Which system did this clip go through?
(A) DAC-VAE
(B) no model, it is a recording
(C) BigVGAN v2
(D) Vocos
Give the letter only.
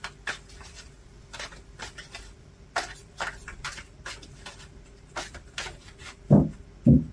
B